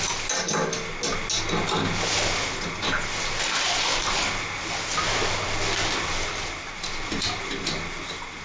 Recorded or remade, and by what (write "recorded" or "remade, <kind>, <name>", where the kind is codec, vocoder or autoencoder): recorded